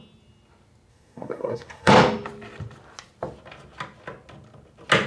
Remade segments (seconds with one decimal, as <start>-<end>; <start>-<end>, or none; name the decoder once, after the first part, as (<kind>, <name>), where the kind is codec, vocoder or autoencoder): 0.9-1.9 (codec, SNAC)